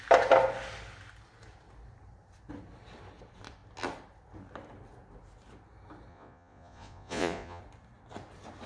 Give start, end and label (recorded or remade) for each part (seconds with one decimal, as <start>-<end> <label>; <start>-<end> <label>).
0.0-6.1 recorded; 6.1-7.6 remade; 7.6-8.7 recorded